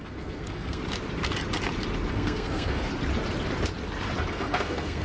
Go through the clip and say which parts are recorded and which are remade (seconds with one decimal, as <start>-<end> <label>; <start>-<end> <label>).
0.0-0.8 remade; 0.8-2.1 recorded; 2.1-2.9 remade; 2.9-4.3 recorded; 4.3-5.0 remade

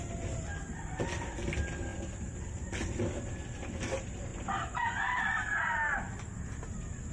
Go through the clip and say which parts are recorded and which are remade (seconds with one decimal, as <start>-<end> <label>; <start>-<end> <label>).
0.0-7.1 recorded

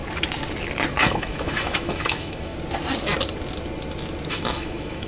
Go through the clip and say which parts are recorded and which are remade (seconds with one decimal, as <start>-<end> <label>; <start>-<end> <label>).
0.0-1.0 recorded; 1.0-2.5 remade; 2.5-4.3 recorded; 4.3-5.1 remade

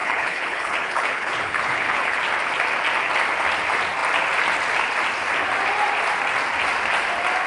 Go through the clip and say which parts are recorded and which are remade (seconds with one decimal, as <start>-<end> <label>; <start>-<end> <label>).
0.0-2.2 remade; 2.2-7.5 recorded